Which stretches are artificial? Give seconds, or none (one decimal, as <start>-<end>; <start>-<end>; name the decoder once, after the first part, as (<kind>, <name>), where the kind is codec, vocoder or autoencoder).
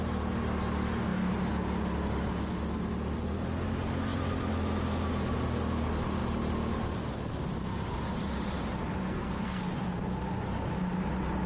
9.0-9.6 (codec, SNAC)